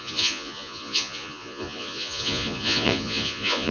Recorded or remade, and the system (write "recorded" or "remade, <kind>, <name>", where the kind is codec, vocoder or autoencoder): remade, vocoder, Vocos